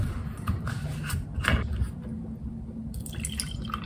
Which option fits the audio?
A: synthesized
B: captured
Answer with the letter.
B